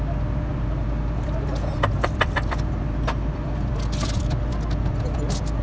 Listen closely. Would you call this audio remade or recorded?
recorded